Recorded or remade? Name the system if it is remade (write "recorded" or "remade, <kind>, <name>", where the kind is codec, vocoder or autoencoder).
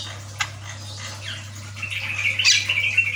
recorded